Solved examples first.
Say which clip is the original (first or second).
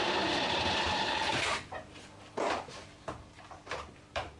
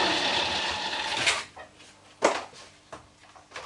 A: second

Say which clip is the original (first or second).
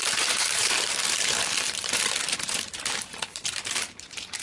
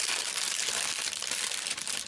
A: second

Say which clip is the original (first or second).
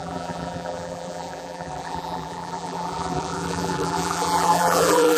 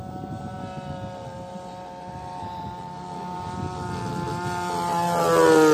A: second